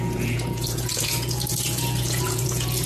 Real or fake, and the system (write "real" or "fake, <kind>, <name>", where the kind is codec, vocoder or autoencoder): fake, vocoder, Vocos